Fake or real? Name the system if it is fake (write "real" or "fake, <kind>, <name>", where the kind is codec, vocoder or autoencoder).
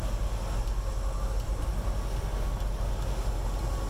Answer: real